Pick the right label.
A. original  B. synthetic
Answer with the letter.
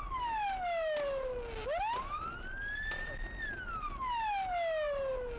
A